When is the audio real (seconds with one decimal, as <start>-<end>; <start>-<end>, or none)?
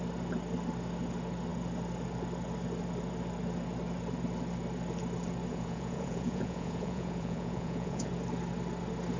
0.0-5.5; 8.1-9.2